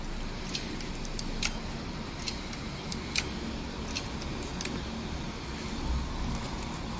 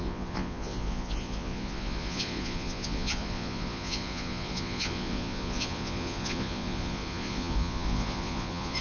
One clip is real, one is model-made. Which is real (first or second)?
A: first